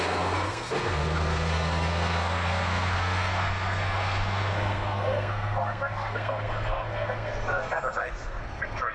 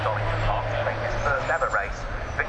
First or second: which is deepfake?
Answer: first